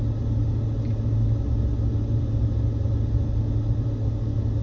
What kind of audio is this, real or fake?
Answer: real